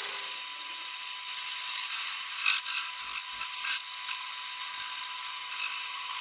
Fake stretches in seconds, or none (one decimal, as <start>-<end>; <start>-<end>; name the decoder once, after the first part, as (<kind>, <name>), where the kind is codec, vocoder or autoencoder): none